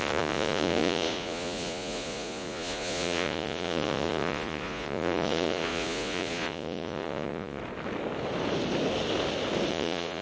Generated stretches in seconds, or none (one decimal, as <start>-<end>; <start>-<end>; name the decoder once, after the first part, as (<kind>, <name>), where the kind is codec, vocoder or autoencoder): 0.0-7.6 (vocoder, Vocos); 9.7-10.2